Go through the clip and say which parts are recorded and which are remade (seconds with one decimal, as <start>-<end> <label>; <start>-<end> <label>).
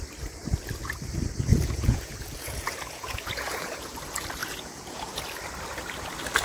0.0-1.5 recorded; 1.5-4.0 remade; 4.0-4.4 recorded; 4.4-5.2 remade; 5.2-6.4 recorded